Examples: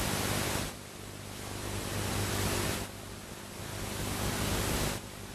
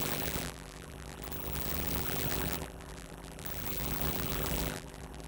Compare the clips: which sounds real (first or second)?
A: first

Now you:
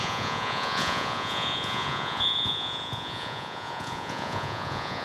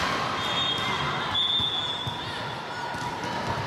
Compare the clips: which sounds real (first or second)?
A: second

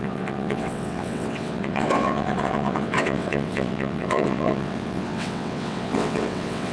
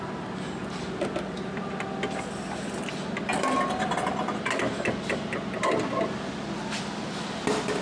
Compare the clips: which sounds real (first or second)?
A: second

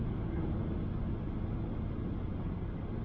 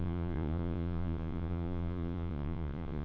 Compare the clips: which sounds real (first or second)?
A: first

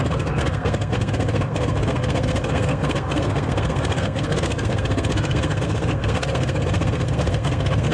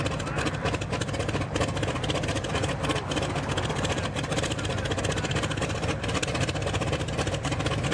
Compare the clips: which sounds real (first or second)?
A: second